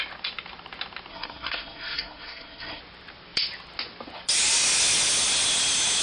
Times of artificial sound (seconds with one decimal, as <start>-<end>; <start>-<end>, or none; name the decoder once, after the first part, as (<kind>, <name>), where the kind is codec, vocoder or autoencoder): 1.1-2.8 (codec, SNAC)